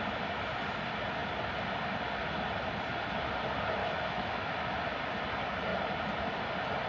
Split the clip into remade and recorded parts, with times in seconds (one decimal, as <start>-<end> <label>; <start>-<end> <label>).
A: 0.0-3.8 recorded; 3.8-4.7 remade; 4.7-6.9 recorded